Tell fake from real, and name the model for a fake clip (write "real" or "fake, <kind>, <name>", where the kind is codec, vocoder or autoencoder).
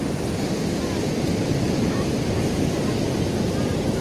real